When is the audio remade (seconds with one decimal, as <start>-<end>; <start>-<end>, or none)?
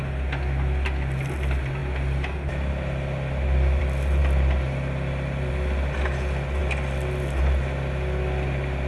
none